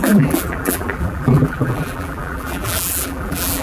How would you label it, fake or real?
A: fake